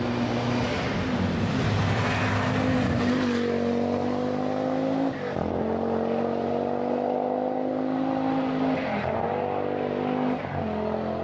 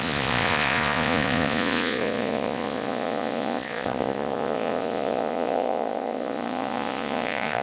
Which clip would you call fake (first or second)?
second